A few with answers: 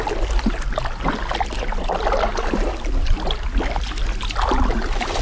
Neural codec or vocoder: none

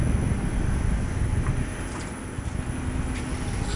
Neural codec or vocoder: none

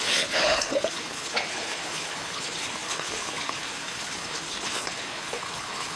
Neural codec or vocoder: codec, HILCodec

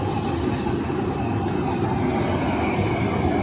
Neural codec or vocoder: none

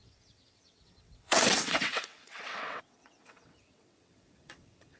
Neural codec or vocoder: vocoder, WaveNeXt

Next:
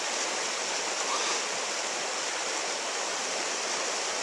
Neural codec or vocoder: none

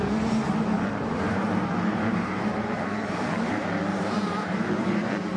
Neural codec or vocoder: vocoder, BigVGAN v2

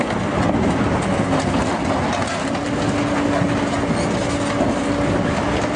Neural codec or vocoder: none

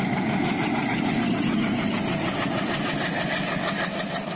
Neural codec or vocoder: none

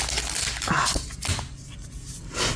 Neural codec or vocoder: none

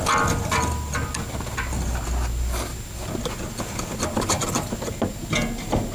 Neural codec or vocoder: none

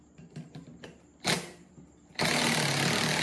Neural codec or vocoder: none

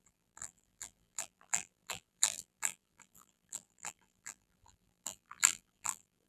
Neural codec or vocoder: vocoder, BigVGAN v2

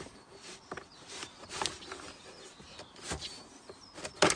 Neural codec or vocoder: none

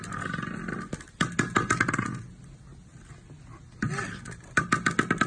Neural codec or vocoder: none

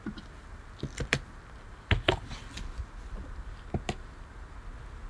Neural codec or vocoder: none